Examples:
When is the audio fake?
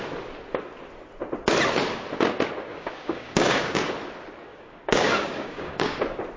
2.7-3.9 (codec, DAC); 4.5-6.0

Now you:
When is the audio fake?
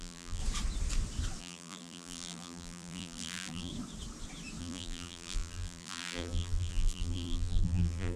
0.0-0.4 (vocoder, BigVGAN v2); 1.4-3.7; 4.6-8.2